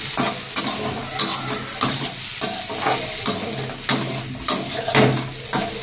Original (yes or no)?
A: yes